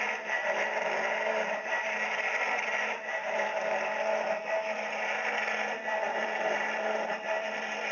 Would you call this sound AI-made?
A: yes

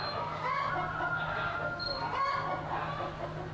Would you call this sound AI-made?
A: no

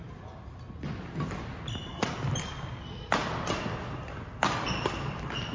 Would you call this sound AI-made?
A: no